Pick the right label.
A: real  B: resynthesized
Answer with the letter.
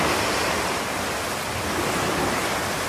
A